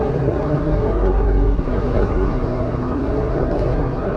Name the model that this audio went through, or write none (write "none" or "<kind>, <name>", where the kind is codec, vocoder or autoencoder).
codec, SNAC